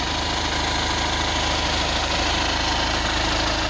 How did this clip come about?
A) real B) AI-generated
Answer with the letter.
A